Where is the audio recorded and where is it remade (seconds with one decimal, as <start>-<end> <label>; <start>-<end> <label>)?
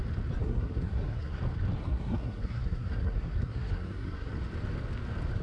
0.0-0.4 recorded; 0.4-1.4 remade; 1.4-1.8 recorded; 1.8-4.3 remade; 4.3-5.4 recorded